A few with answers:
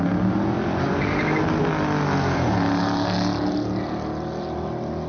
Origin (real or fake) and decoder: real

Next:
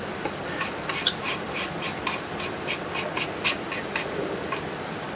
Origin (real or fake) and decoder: real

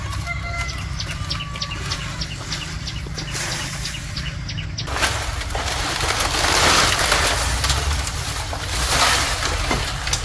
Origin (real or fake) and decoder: real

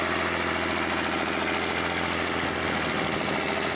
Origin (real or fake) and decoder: real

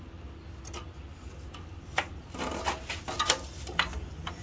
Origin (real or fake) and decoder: real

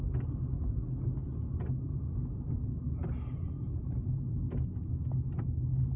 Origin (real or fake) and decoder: real